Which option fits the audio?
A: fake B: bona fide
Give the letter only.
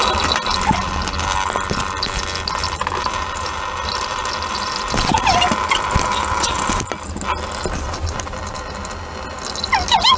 B